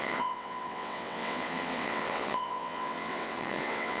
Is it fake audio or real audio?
fake